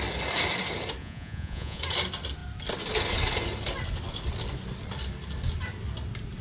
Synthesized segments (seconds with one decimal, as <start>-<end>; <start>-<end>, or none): 1.0-1.8